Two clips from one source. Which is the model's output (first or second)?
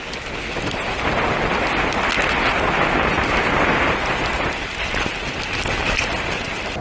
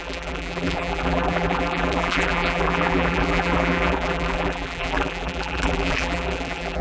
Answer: second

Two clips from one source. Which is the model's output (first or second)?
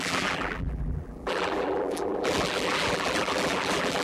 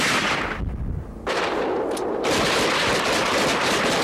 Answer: first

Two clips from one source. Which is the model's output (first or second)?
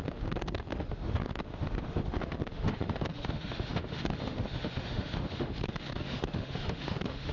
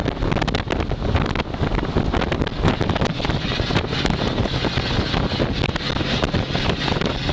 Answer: first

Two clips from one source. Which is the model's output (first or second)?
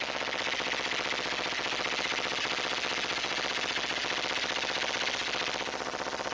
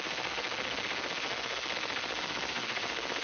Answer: second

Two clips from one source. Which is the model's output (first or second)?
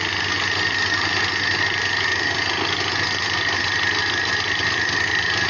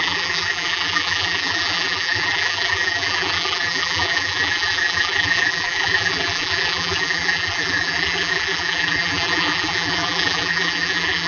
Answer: second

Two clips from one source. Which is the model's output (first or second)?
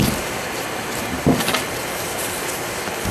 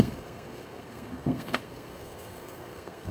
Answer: second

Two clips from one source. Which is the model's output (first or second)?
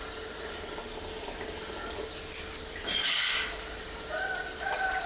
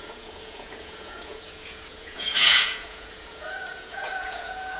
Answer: second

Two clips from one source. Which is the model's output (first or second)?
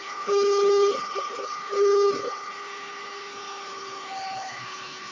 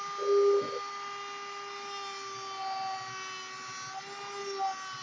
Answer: first